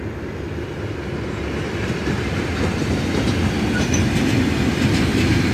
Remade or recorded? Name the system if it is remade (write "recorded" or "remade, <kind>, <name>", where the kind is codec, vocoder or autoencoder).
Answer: recorded